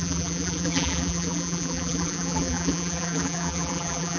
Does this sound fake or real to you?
fake